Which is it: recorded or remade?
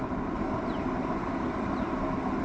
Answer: recorded